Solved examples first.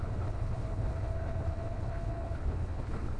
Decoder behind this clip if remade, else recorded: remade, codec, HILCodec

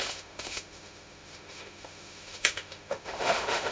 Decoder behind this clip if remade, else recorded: remade, autoencoder, DAC-VAE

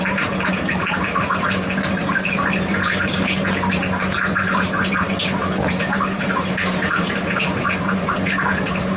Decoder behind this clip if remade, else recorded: remade, vocoder, BigVGAN v2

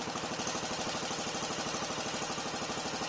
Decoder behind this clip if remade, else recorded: recorded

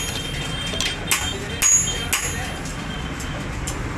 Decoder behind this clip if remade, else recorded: recorded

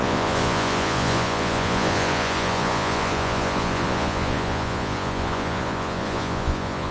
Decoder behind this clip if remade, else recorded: remade, vocoder, Vocos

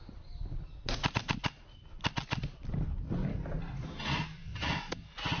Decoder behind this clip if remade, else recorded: recorded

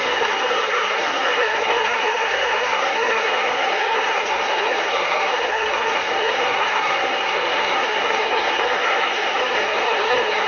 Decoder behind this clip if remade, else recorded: remade, codec, SNAC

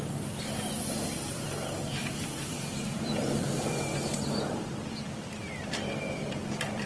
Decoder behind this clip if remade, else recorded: remade, vocoder, BigVGAN v2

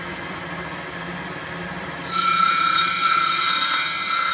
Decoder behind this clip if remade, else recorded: remade, vocoder, BigVGAN v2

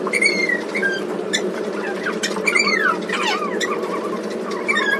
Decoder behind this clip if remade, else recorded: remade, vocoder, BigVGAN v2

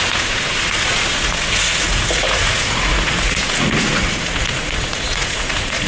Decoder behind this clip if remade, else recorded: remade, vocoder, Vocos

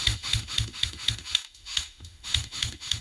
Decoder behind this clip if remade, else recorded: remade, autoencoder, DAC-VAE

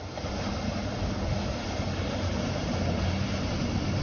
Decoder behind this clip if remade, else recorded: recorded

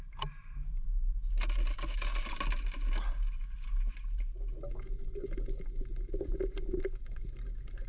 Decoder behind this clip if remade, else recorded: recorded